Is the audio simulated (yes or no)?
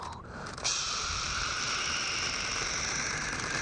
yes